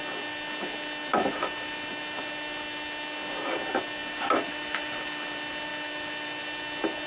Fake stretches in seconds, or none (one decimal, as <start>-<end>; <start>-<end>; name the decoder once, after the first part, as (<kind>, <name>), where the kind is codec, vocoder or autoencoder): 1.1-1.9 (vocoder, BigVGAN v2); 4.0-5.0; 5.7-6.4

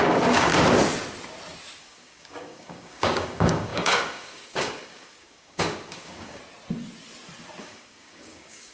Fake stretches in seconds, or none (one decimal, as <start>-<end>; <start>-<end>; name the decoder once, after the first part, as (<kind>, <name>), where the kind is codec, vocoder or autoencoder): 0.0-0.5 (codec, DAC); 1.8-6.4; 7.6-8.7

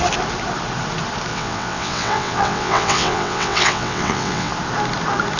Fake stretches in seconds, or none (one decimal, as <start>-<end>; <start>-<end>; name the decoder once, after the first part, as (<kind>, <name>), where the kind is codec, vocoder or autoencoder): 1.3-4.5 (vocoder, WaveNeXt)

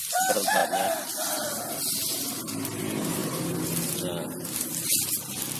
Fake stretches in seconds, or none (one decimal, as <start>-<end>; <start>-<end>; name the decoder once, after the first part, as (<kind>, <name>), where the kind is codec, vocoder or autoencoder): none